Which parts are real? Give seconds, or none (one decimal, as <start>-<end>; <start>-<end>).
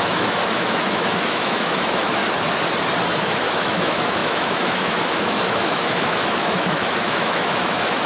2.2-3.2